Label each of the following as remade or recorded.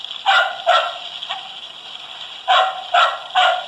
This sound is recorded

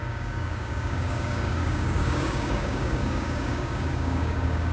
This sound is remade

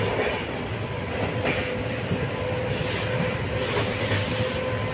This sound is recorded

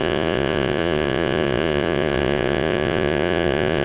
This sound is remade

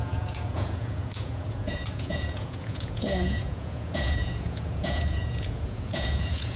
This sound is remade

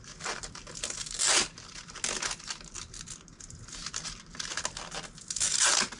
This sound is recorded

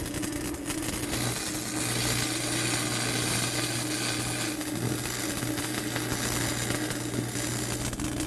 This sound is recorded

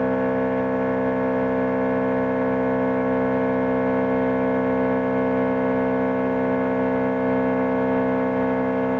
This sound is recorded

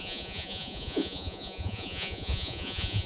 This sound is remade